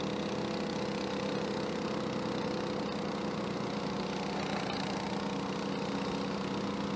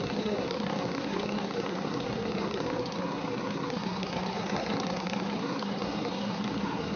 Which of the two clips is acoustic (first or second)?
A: first